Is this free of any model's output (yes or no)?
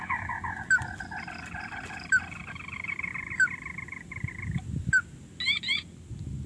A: yes